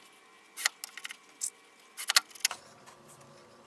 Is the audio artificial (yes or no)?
no